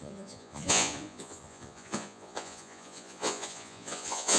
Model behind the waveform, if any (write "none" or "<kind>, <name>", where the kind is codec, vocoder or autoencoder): vocoder, Vocos